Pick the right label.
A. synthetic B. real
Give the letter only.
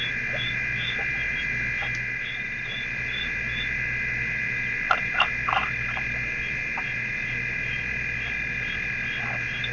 B